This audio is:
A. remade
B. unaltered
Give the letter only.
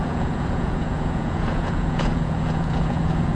A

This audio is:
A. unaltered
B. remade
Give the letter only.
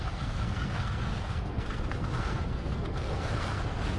B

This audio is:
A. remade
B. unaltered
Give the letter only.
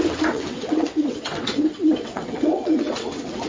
A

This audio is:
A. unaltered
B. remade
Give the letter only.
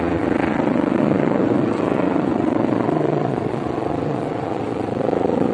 B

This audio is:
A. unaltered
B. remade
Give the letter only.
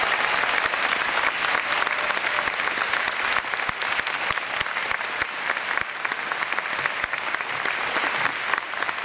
A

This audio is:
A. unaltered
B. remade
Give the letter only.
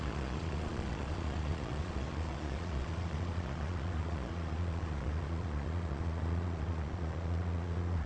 B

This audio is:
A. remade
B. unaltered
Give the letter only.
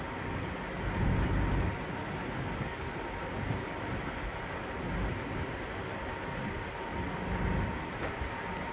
B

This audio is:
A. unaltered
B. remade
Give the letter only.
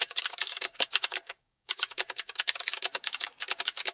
B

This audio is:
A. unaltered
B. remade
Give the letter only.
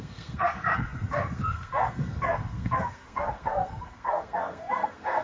B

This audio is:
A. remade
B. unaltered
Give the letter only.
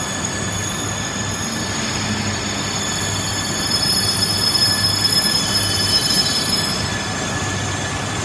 B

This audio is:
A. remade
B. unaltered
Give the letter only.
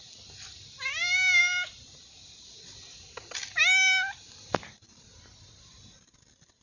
B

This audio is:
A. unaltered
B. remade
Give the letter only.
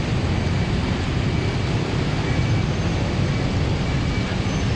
A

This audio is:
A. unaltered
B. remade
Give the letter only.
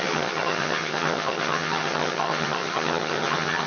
B